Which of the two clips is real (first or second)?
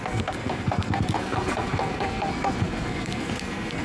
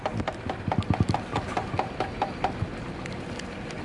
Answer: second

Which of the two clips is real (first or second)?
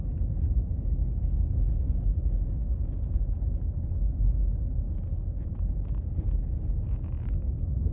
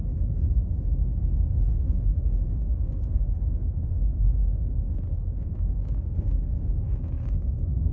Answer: first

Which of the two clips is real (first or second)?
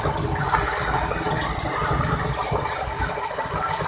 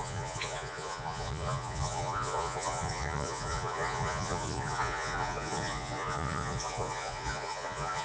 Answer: first